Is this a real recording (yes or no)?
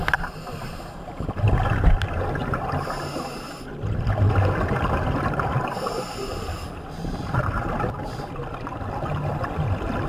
yes